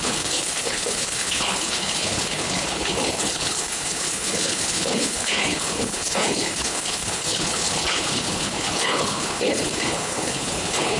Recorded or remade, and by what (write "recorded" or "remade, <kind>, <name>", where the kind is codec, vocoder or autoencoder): remade, codec, HILCodec